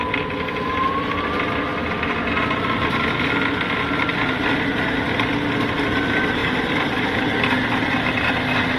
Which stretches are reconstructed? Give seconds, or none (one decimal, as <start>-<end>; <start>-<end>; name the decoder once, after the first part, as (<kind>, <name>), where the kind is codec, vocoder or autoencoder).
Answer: 6.4-7.4 (vocoder, BigVGAN v2)